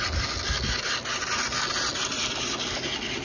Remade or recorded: recorded